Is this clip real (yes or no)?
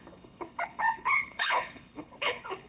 no